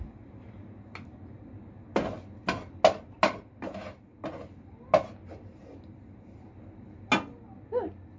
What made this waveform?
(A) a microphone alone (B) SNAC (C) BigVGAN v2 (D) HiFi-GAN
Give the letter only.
A